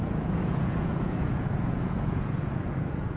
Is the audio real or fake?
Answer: fake